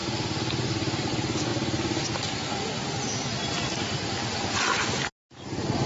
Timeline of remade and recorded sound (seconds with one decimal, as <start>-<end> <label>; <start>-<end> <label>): 0.0-5.9 recorded